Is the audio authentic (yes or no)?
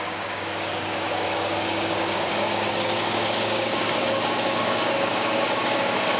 no